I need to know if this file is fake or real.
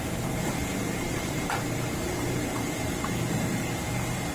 fake